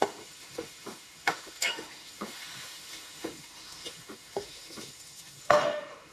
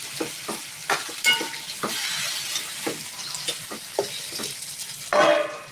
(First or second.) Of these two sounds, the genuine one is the second